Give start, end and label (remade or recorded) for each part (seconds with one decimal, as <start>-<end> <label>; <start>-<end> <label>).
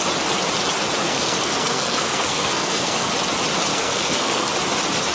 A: 0.0-1.0 recorded; 1.0-3.1 remade; 3.1-3.7 recorded; 3.7-4.5 remade; 4.5-5.1 recorded